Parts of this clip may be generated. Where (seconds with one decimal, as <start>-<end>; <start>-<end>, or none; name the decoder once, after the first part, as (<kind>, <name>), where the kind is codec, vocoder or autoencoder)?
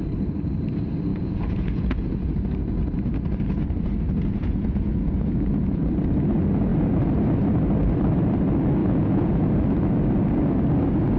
1.1-2.3 (vocoder, Vocos); 4.4-5.8; 8.8-9.5